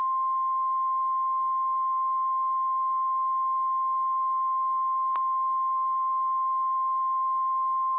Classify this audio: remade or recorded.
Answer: recorded